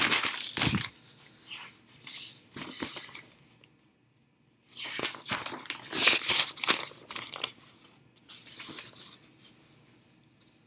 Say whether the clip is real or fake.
real